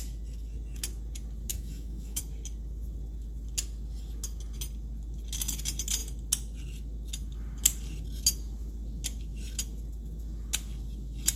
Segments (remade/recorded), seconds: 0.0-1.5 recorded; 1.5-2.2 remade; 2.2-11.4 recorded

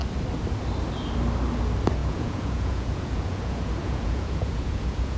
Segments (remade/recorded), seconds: 0.0-2.0 recorded; 2.0-5.2 remade